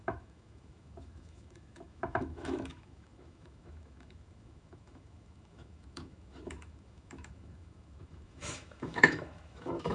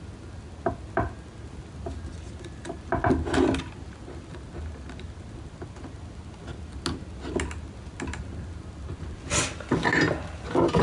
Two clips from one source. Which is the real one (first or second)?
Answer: second